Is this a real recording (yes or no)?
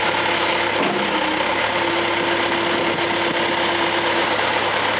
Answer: yes